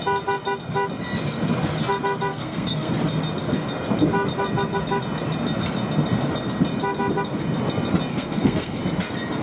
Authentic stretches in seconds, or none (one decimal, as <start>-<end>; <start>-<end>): 0.0-2.3; 2.9-8.1; 8.8-9.4